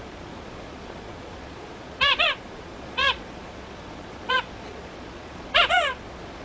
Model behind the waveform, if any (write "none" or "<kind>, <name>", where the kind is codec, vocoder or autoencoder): vocoder, Vocos